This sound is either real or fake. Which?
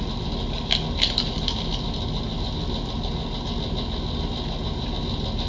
real